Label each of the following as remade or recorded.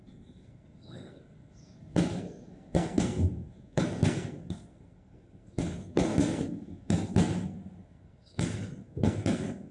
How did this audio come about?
remade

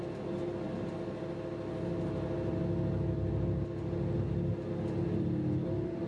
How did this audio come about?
recorded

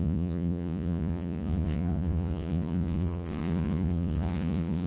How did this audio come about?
remade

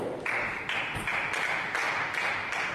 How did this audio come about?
recorded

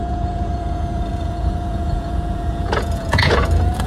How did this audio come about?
remade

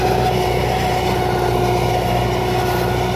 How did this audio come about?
recorded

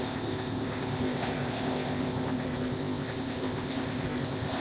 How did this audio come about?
remade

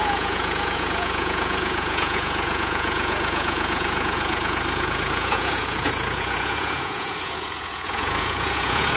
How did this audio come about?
remade